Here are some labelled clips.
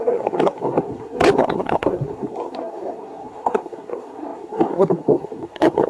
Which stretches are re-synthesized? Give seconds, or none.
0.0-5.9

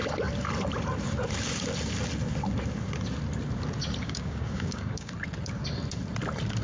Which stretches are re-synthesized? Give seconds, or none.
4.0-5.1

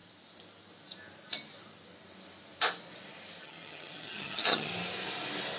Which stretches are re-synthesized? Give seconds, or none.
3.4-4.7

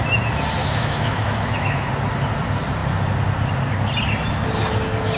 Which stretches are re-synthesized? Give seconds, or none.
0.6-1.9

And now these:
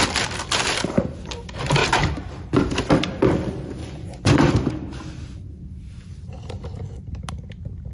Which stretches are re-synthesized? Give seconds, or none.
3.8-4.5

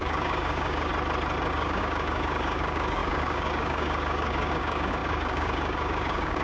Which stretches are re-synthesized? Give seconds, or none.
0.0-0.9; 1.5-6.4